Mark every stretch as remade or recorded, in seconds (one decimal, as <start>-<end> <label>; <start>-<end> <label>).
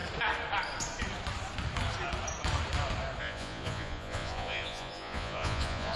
0.0-3.2 recorded; 3.2-6.0 remade